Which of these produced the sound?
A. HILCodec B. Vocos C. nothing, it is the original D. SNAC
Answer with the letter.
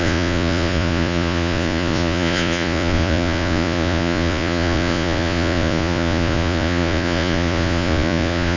B